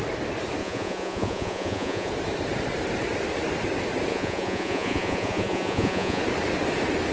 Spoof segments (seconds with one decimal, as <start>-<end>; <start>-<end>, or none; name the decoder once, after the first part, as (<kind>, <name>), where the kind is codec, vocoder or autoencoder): 0.6-2.1 (vocoder, Vocos); 4.1-6.2